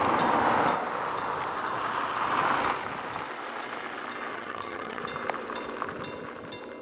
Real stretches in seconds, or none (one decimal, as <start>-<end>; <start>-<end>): 0.0-4.3; 5.0-6.8